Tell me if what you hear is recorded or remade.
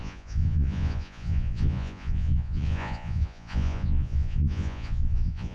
remade